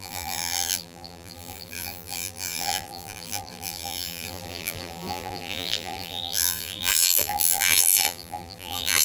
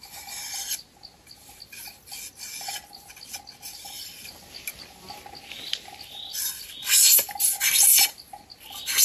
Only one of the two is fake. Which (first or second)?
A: first